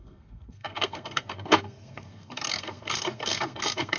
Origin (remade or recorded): remade